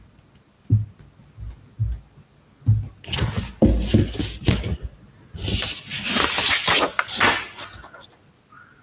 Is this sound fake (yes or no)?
no